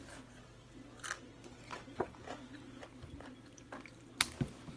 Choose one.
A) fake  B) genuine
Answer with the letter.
B